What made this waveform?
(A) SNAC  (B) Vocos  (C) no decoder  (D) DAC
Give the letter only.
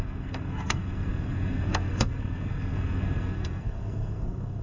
A